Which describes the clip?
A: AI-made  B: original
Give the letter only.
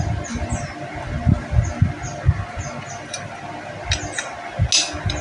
B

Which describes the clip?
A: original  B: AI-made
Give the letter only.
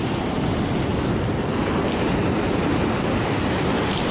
A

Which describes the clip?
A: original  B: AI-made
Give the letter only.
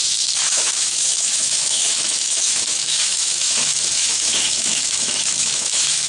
B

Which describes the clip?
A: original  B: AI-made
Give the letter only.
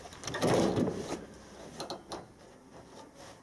A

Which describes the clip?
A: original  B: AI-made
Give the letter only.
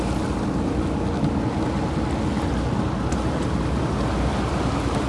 A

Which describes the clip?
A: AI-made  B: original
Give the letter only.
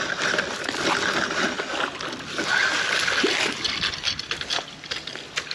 B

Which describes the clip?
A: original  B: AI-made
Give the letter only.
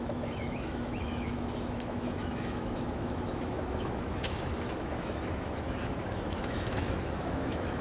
B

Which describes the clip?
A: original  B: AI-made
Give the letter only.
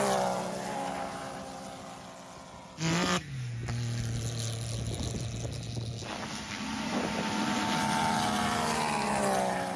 A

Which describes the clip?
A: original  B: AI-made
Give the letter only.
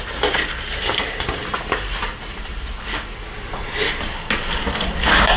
A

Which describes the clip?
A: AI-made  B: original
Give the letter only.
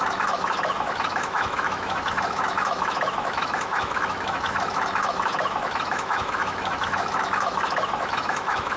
A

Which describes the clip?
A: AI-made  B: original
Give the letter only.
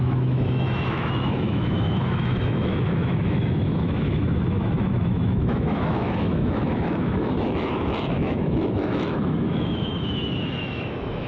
A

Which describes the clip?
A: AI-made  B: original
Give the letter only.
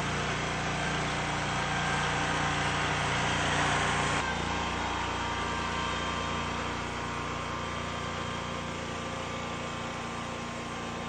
B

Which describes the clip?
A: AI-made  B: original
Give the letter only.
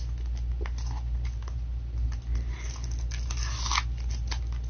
B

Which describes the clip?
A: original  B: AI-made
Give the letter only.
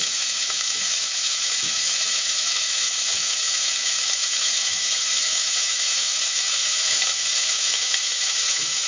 B